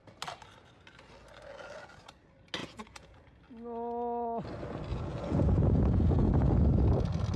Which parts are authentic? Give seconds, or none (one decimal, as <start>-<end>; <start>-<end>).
0.0-2.6; 3.2-4.9; 6.5-7.4